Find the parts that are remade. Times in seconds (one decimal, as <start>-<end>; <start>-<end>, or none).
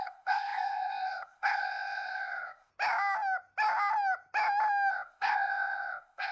0.0-2.7; 4.9-6.3